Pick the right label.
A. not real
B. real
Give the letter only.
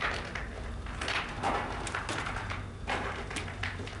A